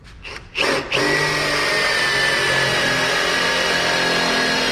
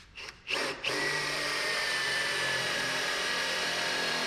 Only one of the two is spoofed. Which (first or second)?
second